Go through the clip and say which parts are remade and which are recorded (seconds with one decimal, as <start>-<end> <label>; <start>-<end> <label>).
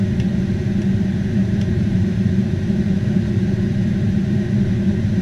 0.0-1.4 recorded; 1.4-2.2 remade; 2.2-5.2 recorded